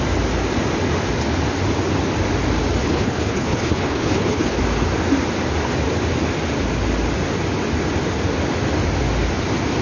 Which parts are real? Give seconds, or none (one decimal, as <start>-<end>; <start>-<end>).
0.0-2.8; 4.6-9.8

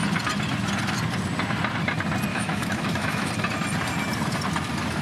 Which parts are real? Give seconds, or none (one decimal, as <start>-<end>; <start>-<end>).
0.0-2.3; 3.3-5.0

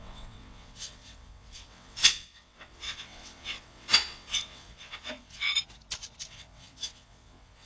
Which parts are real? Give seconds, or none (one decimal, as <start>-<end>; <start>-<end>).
5.5-6.3